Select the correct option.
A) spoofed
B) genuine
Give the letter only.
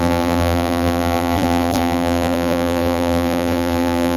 A